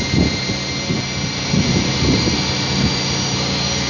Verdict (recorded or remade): recorded